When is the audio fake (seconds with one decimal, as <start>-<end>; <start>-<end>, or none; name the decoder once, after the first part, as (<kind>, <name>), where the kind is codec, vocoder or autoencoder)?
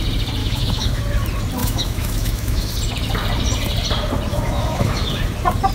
0.4-1.0 (autoencoder, DAC-VAE); 1.6-2.7; 4.3-5.2